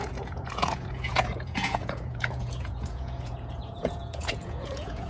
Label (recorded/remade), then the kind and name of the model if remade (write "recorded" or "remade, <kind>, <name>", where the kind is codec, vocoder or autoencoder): remade, vocoder, Vocos